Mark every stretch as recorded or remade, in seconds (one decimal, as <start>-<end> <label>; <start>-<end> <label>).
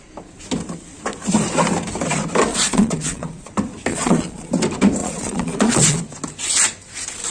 0.0-2.5 recorded; 2.5-3.5 remade; 3.5-3.9 recorded; 3.9-4.5 remade; 4.5-5.0 recorded; 5.0-6.0 remade; 6.0-7.3 recorded